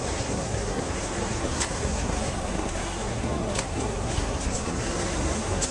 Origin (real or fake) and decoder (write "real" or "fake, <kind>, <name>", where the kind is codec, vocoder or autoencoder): fake, codec, SNAC